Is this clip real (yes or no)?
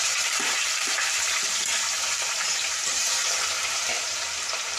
no